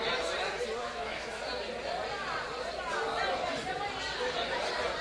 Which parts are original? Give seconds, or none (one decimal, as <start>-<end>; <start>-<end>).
0.0-0.8; 1.4-5.0